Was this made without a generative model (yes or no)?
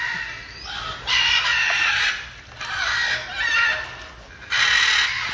yes